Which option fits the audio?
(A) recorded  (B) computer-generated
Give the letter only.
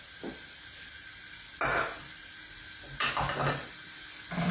A